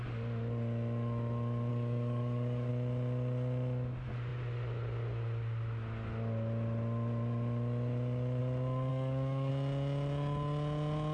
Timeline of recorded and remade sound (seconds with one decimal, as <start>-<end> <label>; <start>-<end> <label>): 0.0-1.7 recorded; 1.7-2.7 remade; 2.7-8.9 recorded; 8.9-9.5 remade; 9.5-11.1 recorded